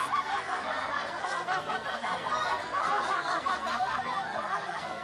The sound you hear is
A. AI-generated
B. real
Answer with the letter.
A